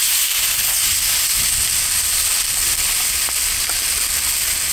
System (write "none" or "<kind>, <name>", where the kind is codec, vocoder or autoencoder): none